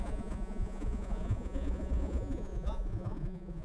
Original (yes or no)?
no